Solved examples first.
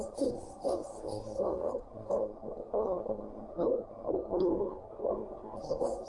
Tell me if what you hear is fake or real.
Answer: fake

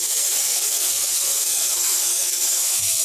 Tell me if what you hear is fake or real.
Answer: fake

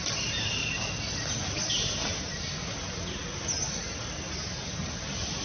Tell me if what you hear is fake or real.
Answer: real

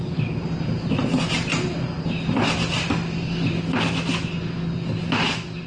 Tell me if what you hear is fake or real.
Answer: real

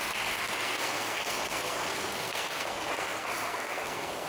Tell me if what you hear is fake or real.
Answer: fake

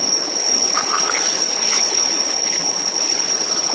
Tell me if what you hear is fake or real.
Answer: fake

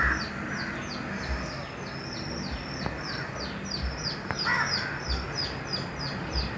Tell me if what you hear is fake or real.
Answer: real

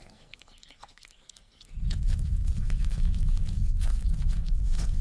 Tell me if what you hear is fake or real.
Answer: fake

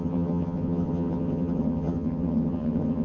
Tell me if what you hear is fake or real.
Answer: fake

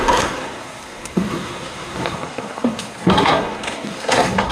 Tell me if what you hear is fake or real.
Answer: fake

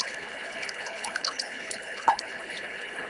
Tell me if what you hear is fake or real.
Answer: fake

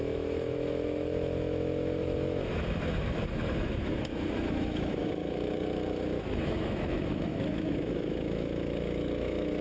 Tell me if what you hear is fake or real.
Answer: fake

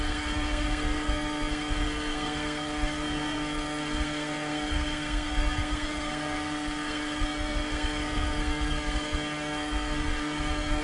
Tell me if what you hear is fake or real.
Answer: fake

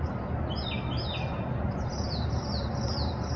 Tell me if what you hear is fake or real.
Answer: real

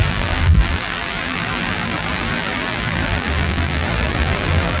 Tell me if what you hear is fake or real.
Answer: fake